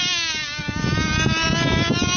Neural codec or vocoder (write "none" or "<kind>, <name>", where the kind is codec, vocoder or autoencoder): none